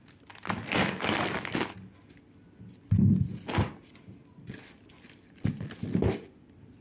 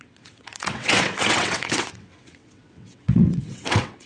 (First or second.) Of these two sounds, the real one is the first